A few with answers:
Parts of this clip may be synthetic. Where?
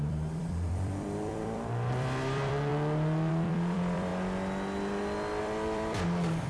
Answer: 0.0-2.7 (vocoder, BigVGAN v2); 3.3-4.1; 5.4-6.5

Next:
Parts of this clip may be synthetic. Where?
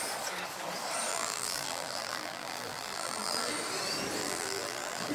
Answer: 1.1-3.5 (vocoder, BigVGAN v2); 4.2-5.1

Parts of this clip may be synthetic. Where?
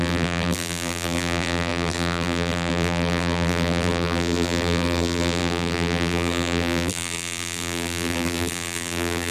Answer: 0.0-9.3 (vocoder, BigVGAN v2)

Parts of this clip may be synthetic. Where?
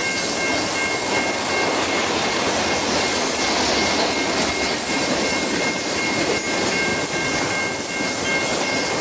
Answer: 4.9-6.9 (vocoder, BigVGAN v2)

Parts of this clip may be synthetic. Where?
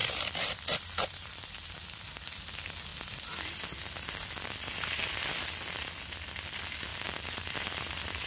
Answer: 0.0-1.7 (vocoder, BigVGAN v2); 2.9-4.8; 6.9-8.3